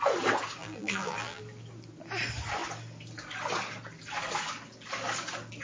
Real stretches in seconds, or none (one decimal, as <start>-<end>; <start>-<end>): 0.0-0.6; 1.4-5.6